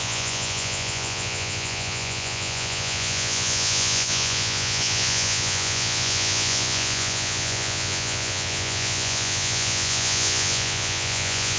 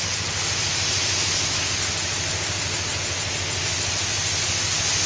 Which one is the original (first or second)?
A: second